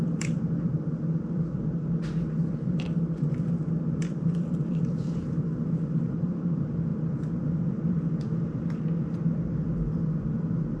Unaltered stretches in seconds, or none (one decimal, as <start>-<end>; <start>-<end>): none